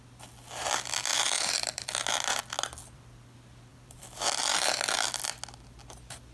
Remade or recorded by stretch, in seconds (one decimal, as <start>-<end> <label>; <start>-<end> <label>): 0.0-1.1 recorded; 1.1-1.9 remade; 1.9-3.7 recorded; 3.7-4.4 remade; 4.4-6.3 recorded